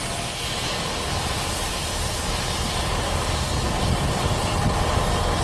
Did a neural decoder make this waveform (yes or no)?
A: no